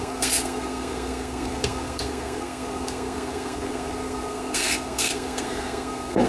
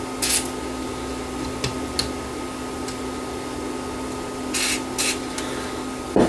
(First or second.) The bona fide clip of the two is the second